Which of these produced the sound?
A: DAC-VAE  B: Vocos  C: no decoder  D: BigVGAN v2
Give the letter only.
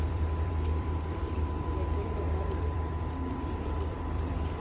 D